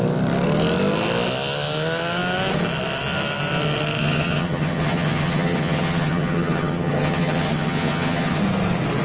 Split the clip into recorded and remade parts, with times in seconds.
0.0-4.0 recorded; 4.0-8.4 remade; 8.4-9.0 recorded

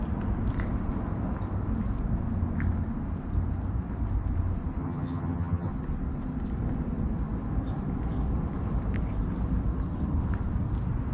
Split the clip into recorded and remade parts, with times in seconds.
0.0-4.8 recorded; 4.8-5.7 remade; 5.7-11.1 recorded

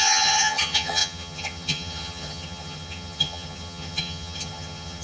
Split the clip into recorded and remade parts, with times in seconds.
0.0-5.0 remade

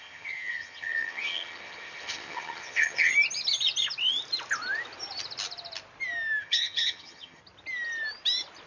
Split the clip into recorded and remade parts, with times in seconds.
0.0-3.1 remade; 3.1-6.4 recorded; 6.4-7.4 remade; 7.4-8.7 recorded

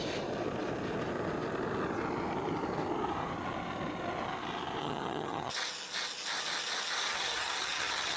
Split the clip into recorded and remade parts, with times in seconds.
0.0-4.8 recorded; 4.8-5.5 remade; 5.5-7.1 recorded; 7.1-8.2 remade

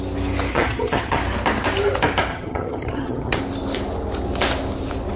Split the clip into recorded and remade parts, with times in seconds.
0.0-0.5 recorded; 0.5-1.2 remade; 1.2-2.3 recorded; 2.3-3.4 remade; 3.4-5.2 recorded